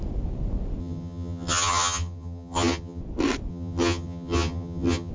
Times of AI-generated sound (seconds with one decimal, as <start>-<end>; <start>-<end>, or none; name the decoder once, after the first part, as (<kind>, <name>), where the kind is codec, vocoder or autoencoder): 0.8-3.0 (vocoder, HiFi-GAN); 3.5-5.1